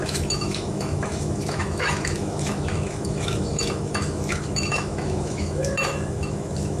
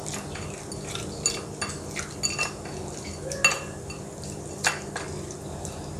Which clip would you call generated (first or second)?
first